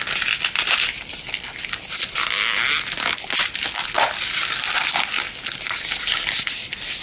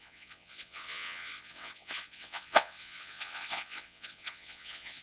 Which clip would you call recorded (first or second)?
first